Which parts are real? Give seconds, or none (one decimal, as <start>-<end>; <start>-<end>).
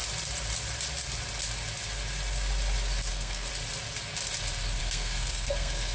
0.0-3.1; 3.5-4.8